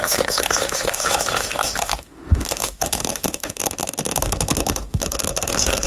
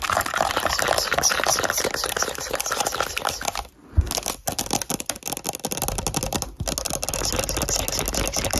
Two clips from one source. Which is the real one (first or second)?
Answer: second